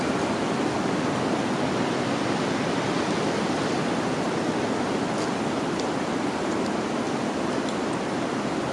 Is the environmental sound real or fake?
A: real